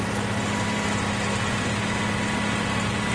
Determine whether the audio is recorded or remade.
recorded